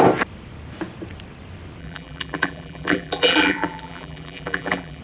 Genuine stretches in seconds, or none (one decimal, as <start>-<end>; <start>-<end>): 0.0-1.8